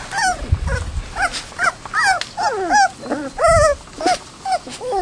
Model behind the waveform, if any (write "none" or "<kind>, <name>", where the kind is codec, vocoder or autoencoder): none